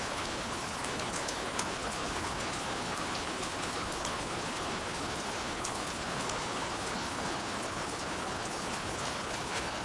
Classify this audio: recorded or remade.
remade